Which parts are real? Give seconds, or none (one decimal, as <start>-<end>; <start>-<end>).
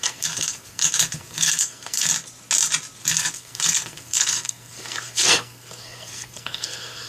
2.1-3.1